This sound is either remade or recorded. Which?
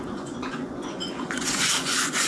remade